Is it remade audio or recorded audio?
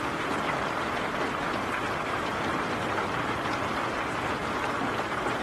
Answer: remade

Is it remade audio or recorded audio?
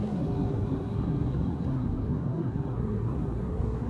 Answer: remade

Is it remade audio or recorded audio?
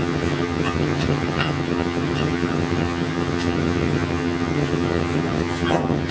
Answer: remade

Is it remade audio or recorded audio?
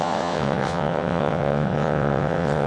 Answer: remade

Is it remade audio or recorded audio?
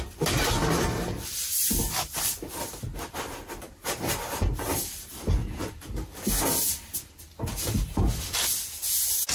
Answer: recorded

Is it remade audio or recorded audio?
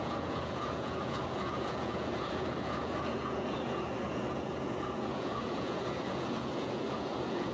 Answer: remade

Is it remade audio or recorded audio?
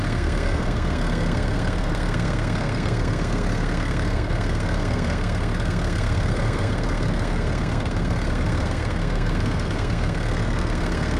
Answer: remade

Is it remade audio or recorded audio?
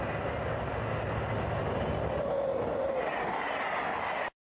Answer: recorded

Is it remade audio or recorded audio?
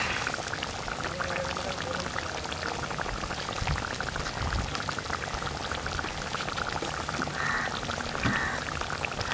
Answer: recorded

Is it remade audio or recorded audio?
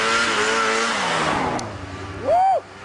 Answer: recorded